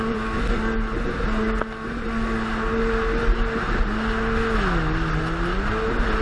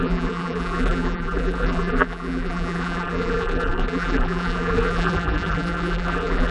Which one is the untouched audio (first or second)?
first